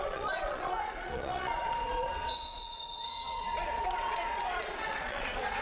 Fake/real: fake